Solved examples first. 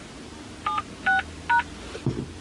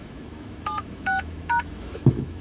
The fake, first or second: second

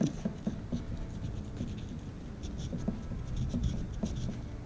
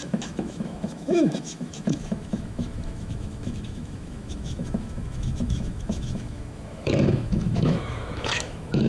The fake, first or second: second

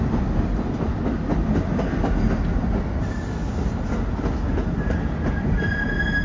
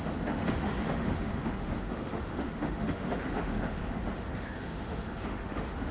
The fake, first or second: second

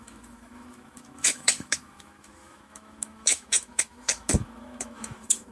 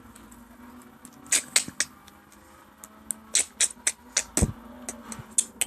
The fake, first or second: first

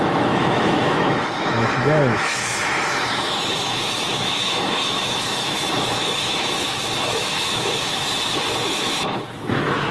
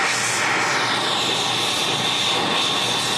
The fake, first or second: first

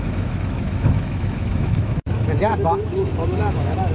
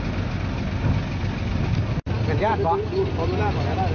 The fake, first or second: first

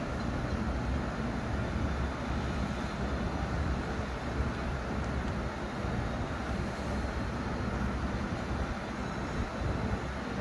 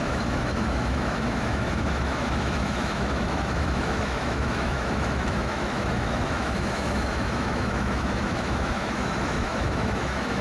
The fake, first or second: second